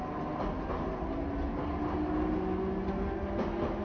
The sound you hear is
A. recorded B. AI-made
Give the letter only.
A